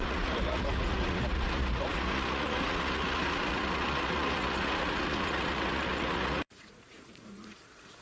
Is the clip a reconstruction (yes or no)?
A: yes